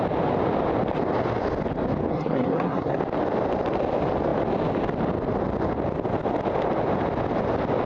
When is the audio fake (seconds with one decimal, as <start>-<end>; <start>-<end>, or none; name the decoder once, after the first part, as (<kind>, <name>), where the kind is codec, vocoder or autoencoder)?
2.1-3.0 (codec, SNAC)